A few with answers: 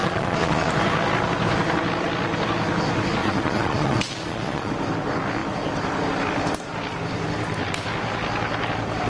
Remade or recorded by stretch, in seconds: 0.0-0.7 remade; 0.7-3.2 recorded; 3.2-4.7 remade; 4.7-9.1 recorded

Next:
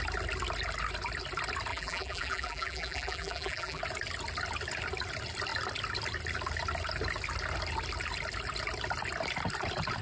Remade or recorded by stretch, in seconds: 0.0-1.7 recorded; 1.7-3.8 remade; 3.8-10.0 recorded

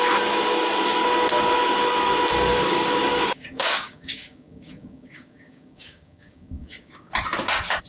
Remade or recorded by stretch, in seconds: 0.0-2.5 recorded; 2.5-7.1 remade; 7.1-7.9 recorded

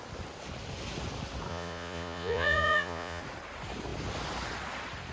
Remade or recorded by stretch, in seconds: 0.0-1.5 recorded; 1.5-3.2 remade; 3.2-5.1 recorded

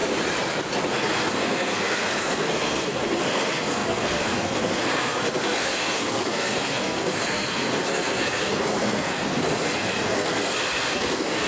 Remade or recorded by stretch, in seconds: 0.0-0.9 recorded; 0.9-11.5 remade

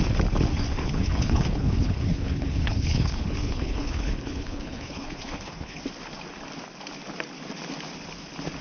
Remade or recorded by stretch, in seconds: 0.0-0.8 recorded; 0.8-5.8 remade; 5.8-8.6 recorded